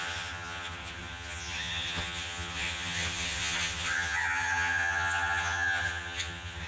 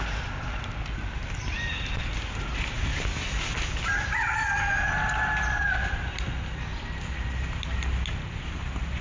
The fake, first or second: first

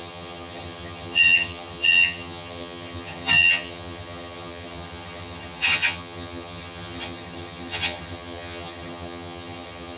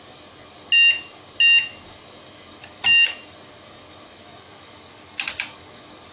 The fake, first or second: first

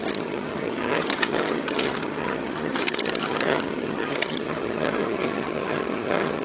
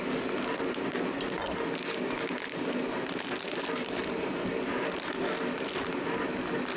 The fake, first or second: first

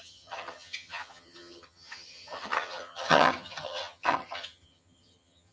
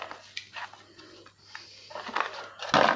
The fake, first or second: first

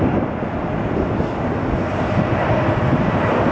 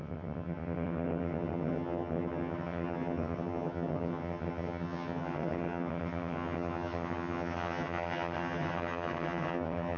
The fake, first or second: second